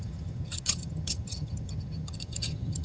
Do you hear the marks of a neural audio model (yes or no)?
yes